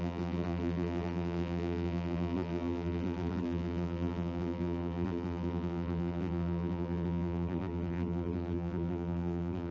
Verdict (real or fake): fake